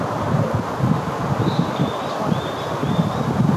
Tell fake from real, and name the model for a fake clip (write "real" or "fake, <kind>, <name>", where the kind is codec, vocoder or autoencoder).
real